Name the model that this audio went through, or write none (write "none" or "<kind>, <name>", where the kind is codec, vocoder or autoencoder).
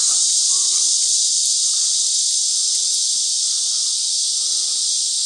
none